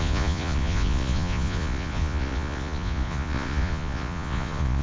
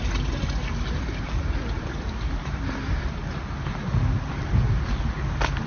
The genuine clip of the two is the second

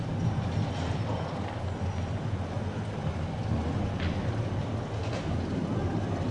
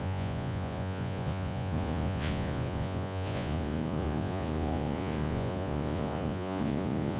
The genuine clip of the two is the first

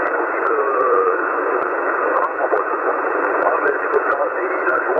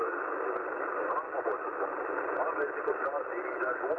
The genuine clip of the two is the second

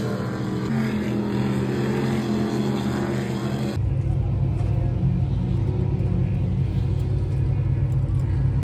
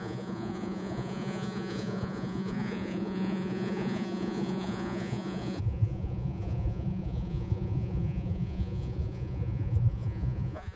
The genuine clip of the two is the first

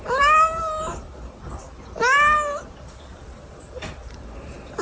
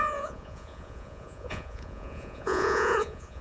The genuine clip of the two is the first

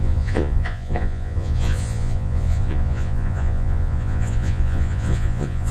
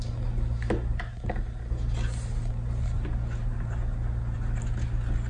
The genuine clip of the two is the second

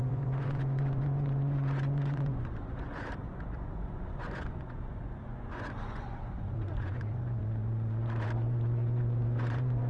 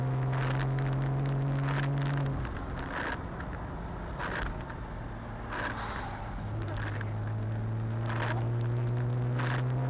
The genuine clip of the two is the second